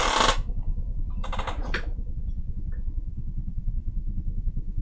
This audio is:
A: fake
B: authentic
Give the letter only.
B